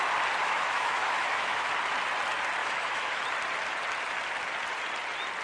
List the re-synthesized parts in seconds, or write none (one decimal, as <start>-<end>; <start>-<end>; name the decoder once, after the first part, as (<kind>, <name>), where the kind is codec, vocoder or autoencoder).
0.4-1.7 (autoencoder, DAC-VAE); 2.6-3.2